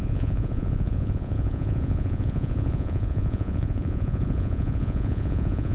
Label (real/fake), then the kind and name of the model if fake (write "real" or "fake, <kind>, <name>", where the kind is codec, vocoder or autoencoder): fake, vocoder, Vocos